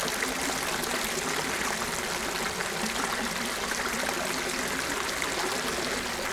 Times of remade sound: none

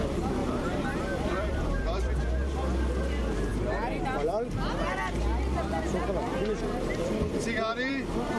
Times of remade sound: 0.4-2.2 (vocoder, BigVGAN v2)

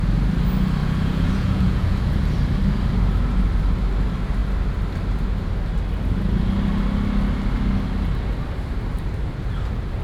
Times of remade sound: 0.8-2.1 (vocoder, Vocos)

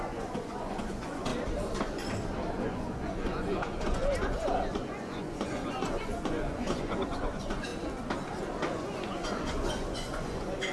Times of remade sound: 0.0-1.3 (vocoder, Vocos); 2.5-7.7; 8.7-10.7

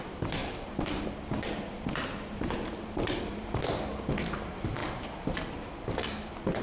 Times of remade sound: 0.4-3.6 (vocoder, BigVGAN v2)

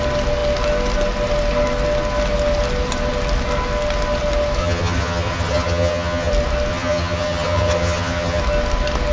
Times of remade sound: 4.6-6.3 (vocoder, HiFi-GAN); 6.7-8.4